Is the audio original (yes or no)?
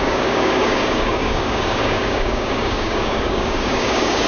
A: no